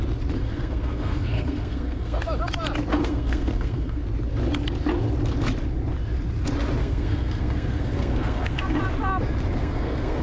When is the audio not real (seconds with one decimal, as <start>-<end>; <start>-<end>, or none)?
0.4-2.2; 2.9-4.0; 6.8-8.8; 9.6-10.2